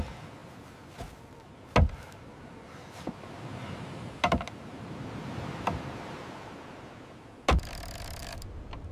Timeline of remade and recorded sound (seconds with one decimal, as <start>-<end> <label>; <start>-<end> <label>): 0.0-8.2 recorded; 8.2-8.9 remade